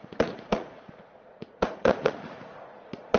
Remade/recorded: remade